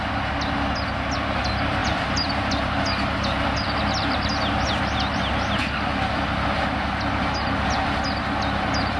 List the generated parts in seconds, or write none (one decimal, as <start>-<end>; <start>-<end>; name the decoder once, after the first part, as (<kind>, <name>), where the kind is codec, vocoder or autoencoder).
1.8-2.4 (vocoder, BigVGAN v2)